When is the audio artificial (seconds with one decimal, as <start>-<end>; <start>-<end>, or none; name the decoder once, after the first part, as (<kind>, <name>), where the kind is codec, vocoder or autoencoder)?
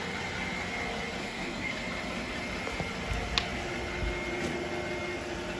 1.2-1.7 (codec, SNAC)